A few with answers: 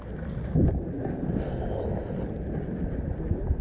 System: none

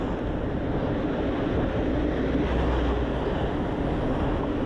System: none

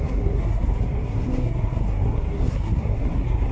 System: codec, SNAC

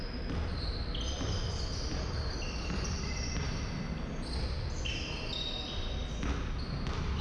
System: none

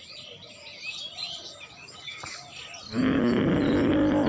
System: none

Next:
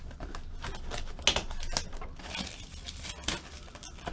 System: none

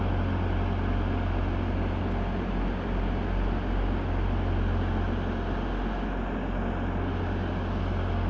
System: none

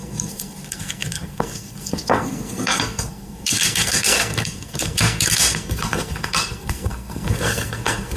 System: codec, SNAC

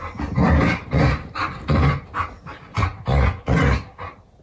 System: none